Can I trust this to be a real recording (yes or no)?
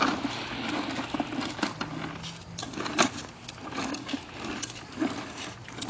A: yes